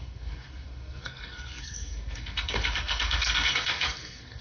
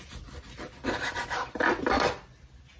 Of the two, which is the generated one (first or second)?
first